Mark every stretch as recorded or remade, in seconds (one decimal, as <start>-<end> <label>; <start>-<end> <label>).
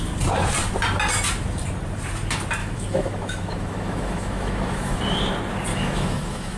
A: 0.0-2.6 recorded; 2.6-5.0 remade; 5.0-5.7 recorded; 5.7-6.6 remade